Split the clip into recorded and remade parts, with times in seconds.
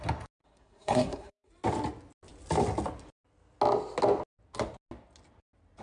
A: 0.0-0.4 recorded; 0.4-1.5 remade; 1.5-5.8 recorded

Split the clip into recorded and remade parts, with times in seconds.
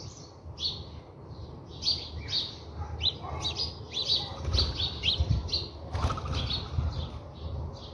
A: 0.0-7.9 recorded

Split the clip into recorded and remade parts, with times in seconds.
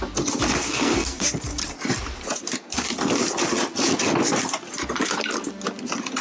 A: 0.0-0.6 recorded; 0.6-1.3 remade; 1.3-6.2 recorded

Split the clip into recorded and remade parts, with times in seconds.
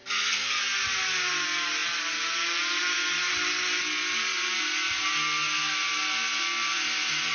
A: 0.0-0.6 remade; 0.6-7.3 recorded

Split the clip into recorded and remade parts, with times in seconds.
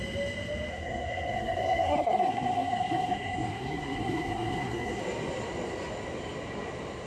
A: 0.0-0.7 recorded; 0.7-5.0 remade; 5.0-7.1 recorded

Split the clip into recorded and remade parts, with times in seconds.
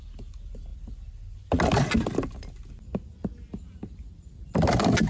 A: 0.0-5.1 recorded